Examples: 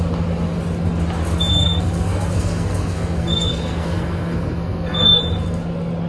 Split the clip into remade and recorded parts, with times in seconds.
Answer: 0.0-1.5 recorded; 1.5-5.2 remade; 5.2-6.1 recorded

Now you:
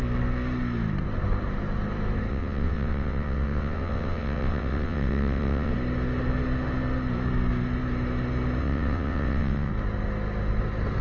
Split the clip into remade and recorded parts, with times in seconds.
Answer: 0.0-2.3 recorded; 2.3-5.7 remade; 5.7-8.6 recorded; 8.6-9.7 remade; 9.7-11.0 recorded

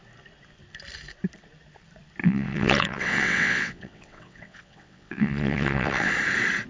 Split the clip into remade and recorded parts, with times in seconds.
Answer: 0.0-2.2 recorded; 2.2-6.1 remade; 6.1-6.7 recorded

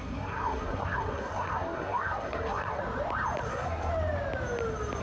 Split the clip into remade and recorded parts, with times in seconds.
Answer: 0.0-2.8 remade; 2.8-3.5 recorded; 3.5-3.9 remade; 3.9-5.0 recorded

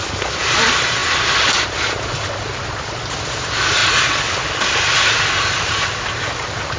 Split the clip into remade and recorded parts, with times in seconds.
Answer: 0.0-6.8 recorded

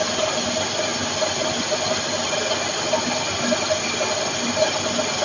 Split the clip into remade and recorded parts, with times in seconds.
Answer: 0.0-5.2 recorded

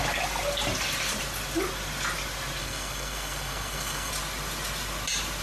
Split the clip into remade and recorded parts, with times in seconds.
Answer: 0.0-2.6 recorded; 2.6-4.1 remade; 4.1-5.4 recorded